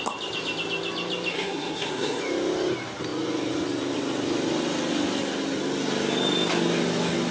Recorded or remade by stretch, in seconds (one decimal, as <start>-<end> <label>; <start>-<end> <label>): 0.0-1.3 recorded; 1.3-2.2 remade; 2.2-7.3 recorded